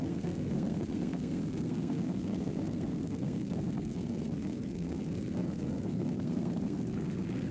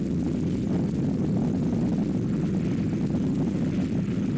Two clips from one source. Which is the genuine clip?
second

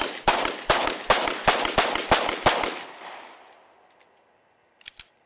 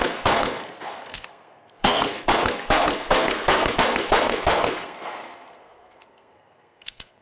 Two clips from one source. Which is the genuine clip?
first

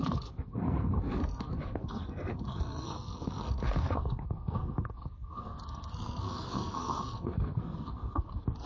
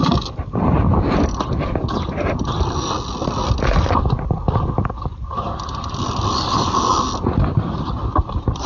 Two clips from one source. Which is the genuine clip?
second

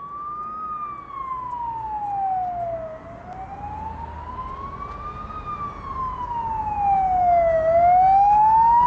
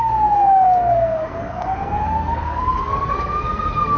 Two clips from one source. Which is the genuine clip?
first